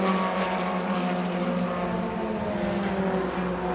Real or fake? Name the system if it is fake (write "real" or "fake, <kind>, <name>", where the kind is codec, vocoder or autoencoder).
real